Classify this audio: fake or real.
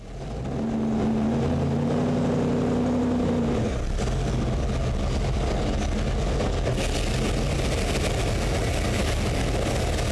real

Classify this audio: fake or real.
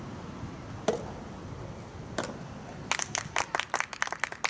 real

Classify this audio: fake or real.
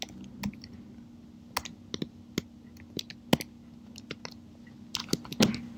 real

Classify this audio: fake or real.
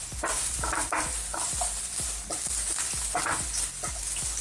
real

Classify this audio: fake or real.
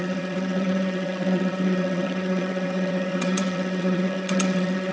fake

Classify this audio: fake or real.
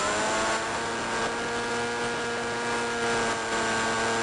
real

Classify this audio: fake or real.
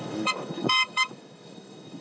fake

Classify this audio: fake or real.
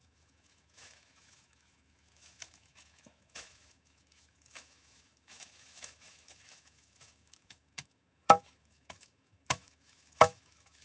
fake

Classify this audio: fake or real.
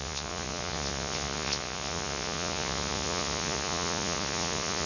fake